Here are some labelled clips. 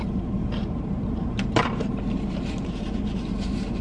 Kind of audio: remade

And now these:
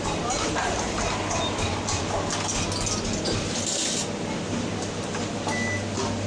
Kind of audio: recorded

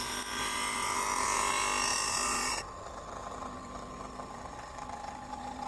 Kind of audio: recorded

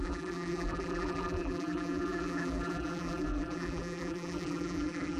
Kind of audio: remade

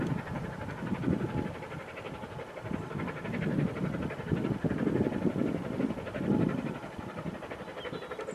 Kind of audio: recorded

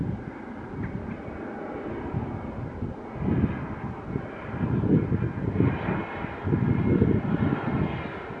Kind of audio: recorded